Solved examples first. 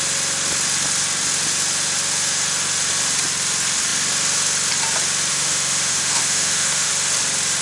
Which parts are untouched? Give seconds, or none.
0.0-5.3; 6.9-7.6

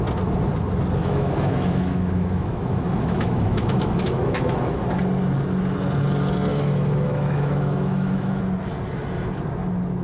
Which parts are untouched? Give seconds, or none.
0.0-1.0; 4.8-6.5; 8.4-10.0

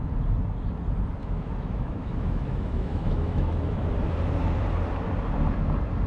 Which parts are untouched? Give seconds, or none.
0.0-1.2; 3.9-6.1